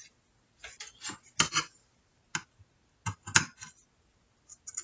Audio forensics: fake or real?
real